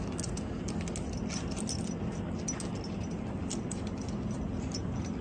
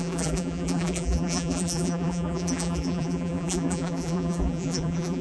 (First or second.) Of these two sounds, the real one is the first